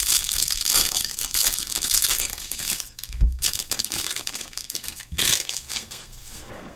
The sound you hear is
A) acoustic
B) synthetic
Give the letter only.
B